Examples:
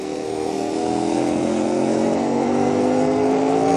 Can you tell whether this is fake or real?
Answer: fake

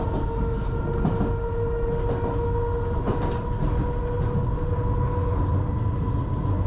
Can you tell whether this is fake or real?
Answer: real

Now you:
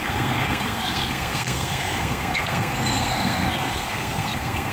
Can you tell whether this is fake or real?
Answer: fake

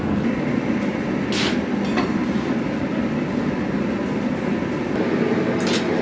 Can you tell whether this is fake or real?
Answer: real